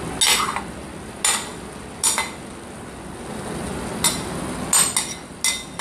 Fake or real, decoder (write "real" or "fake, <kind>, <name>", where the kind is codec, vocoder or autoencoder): real